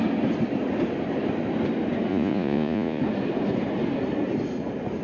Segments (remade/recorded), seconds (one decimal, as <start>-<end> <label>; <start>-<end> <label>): 0.0-2.1 recorded; 2.1-3.0 remade; 3.0-5.0 recorded